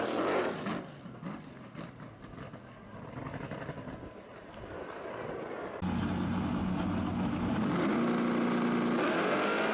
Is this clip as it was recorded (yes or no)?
yes